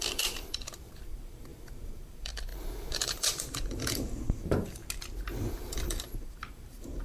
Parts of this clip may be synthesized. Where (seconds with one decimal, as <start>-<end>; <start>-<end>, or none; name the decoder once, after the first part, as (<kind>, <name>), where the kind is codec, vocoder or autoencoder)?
0.0-4.8 (vocoder, BigVGAN v2); 5.5-7.0